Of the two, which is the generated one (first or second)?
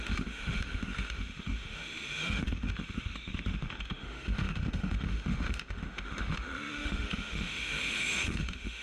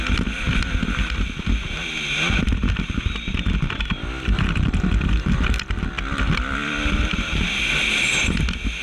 first